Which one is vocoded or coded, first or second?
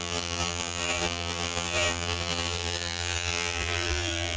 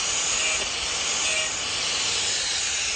first